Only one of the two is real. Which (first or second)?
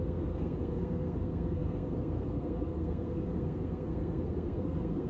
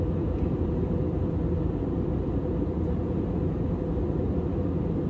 second